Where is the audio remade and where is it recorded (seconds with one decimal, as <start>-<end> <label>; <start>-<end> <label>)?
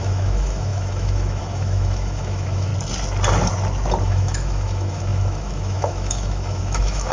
0.0-2.7 remade; 2.7-4.0 recorded; 4.0-7.1 remade